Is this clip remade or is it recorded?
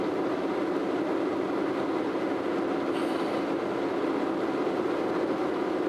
recorded